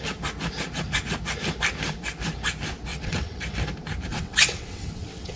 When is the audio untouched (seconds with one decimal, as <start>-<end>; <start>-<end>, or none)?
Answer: 0.0-2.9; 3.4-4.1